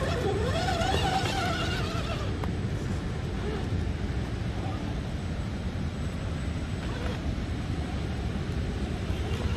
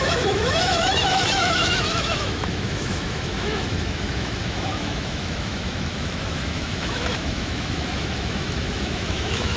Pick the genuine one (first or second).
first